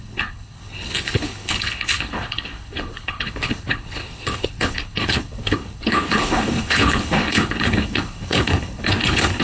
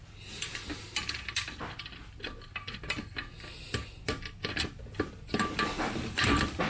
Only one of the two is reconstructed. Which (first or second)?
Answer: first